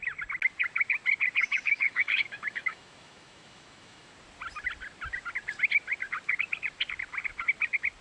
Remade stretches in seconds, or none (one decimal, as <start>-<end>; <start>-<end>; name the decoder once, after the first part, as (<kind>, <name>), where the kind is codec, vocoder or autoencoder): 1.4-4.1 (autoencoder, DAC-VAE)